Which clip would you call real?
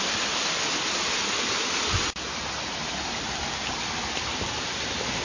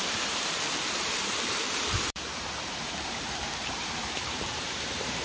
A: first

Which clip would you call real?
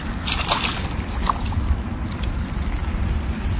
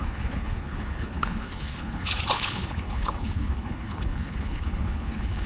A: first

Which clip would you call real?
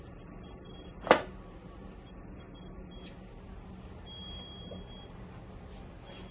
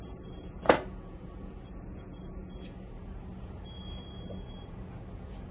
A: first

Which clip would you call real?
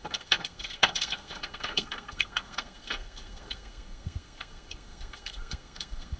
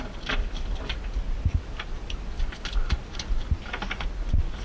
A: second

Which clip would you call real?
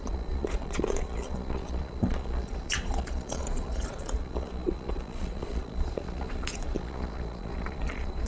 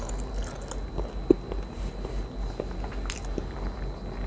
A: second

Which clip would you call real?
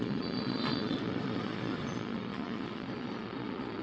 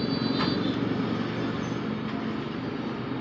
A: second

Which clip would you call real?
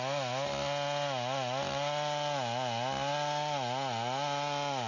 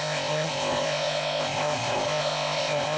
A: first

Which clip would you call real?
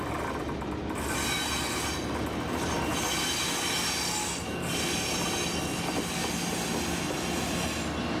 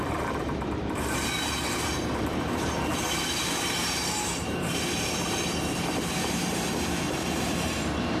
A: first